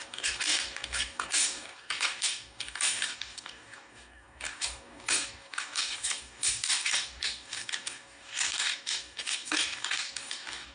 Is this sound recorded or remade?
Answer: remade